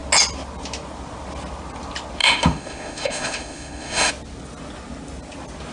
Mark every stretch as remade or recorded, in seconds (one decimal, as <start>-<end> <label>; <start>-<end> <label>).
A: 0.0-2.2 recorded; 2.2-4.1 remade; 4.1-5.7 recorded